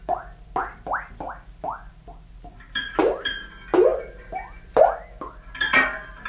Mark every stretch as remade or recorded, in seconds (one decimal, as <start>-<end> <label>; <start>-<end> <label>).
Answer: 0.0-2.8 recorded; 2.8-3.5 remade; 3.5-3.9 recorded; 3.9-4.8 remade; 4.8-6.3 recorded